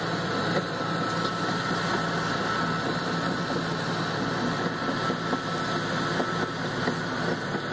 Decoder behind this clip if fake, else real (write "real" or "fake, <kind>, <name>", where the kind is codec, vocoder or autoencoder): real